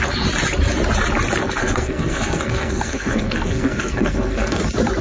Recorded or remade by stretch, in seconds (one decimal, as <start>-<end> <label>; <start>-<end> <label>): 0.0-1.6 recorded; 1.6-4.6 remade; 4.6-5.0 recorded